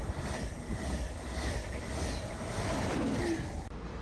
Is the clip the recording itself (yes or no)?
yes